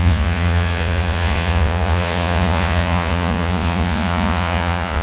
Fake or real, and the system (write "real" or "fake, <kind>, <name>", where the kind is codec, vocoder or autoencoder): fake, vocoder, Vocos